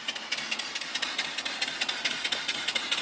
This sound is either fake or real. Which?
real